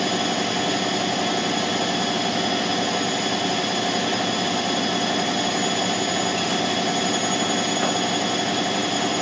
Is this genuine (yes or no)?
yes